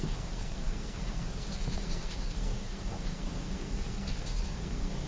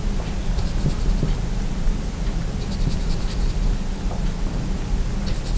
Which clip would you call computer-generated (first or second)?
first